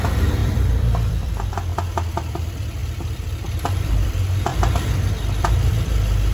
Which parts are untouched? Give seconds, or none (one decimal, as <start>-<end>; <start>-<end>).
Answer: none